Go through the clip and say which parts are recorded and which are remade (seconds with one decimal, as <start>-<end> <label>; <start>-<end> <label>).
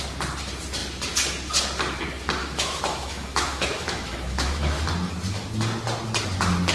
0.0-2.4 recorded; 2.4-4.9 remade; 4.9-6.7 recorded